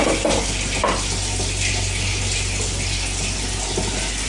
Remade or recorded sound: recorded